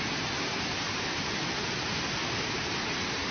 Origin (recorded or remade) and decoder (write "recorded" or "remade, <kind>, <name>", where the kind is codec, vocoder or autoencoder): remade, vocoder, BigVGAN v2